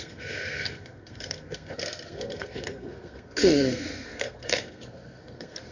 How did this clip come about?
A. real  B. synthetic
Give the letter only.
B